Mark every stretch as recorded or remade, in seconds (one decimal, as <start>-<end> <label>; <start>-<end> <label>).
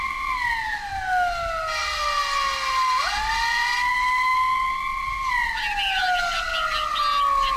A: 0.0-7.6 recorded